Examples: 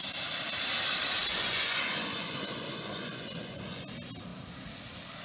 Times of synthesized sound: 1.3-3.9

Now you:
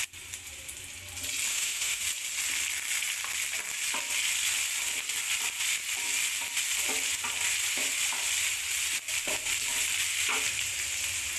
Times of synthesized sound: 1.5-2.0

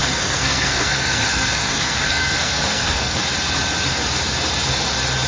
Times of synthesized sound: 0.0-3.2

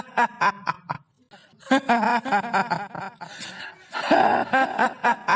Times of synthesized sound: none

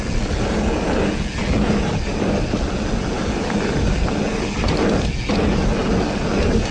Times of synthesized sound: none

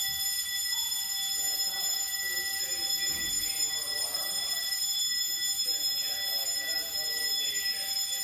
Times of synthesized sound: none

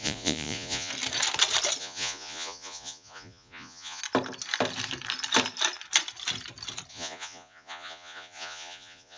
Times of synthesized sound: 0.0-0.9; 1.8-4.0; 6.9-9.2

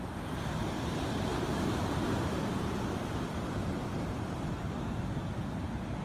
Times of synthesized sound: 1.3-4.9